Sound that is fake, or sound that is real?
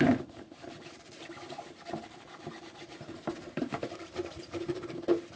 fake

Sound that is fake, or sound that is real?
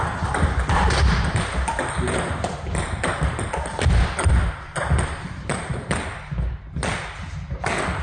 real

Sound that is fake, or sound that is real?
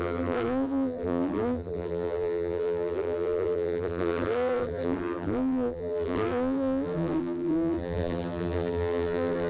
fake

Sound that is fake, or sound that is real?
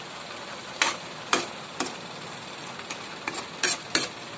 real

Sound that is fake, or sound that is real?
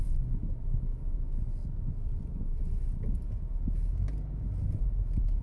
real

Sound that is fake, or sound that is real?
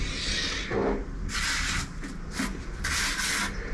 real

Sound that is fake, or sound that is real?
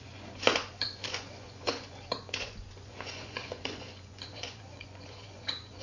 fake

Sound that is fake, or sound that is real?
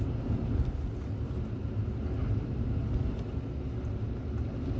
real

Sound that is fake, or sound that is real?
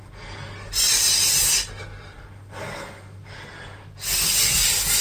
real